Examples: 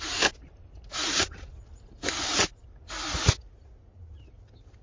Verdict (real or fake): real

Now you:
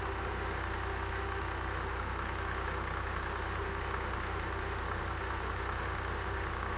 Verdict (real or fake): fake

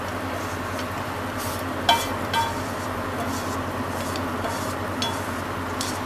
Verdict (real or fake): real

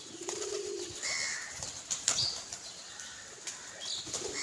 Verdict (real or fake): real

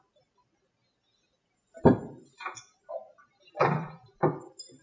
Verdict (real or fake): real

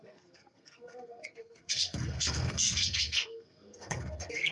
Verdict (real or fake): fake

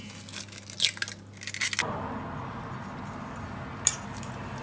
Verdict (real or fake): real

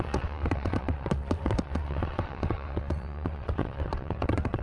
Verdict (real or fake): fake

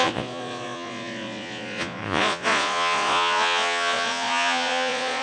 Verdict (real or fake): fake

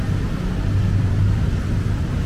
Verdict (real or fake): real